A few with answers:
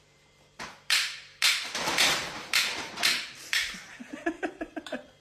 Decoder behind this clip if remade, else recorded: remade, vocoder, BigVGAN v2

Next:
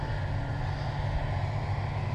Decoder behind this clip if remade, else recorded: recorded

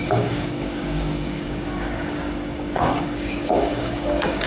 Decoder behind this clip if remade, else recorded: remade, codec, DAC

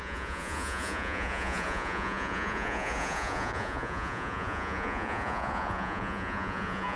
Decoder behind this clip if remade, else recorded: remade, vocoder, Vocos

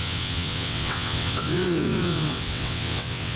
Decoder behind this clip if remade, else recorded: remade, vocoder, WaveNeXt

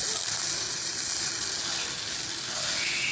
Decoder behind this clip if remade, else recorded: recorded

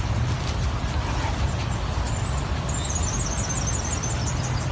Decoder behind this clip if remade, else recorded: recorded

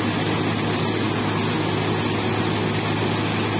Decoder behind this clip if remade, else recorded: recorded